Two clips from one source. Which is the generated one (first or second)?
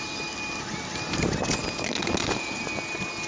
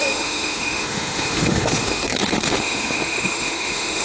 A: second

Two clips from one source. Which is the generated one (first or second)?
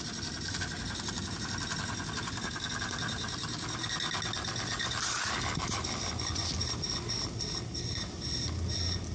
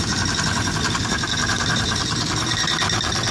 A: second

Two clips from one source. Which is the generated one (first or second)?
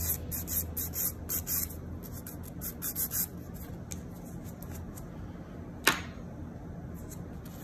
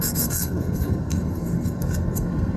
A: second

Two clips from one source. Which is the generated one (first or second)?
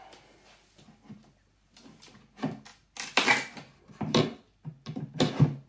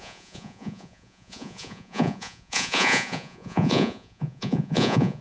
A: second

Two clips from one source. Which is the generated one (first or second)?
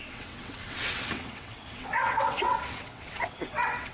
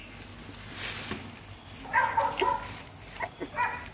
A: first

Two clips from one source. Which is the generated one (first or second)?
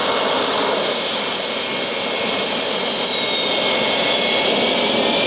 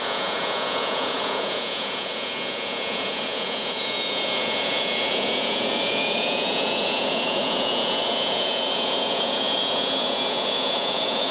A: second